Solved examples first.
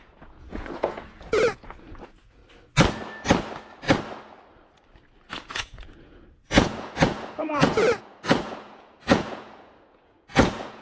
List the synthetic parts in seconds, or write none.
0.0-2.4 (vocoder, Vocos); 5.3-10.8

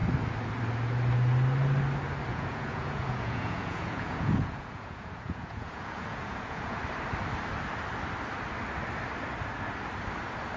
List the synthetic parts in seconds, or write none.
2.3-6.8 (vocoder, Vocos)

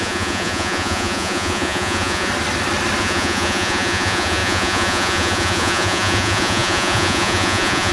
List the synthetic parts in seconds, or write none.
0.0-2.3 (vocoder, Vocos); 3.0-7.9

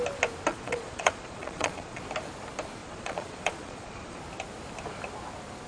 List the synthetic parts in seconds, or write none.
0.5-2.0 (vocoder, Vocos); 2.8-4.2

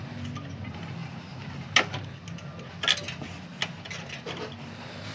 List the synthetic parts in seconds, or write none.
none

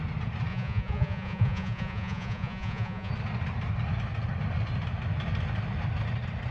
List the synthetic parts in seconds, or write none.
0.5-3.1 (vocoder, Vocos)

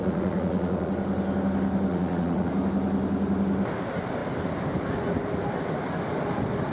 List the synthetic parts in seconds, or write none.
0.0-0.9 (vocoder, Vocos); 1.9-2.5

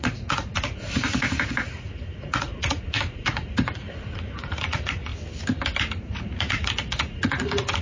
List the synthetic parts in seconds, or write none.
0.0-5.1 (vocoder, Vocos); 6.0-7.8